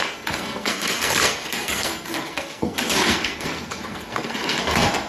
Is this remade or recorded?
remade